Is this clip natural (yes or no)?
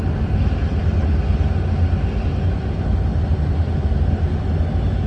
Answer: yes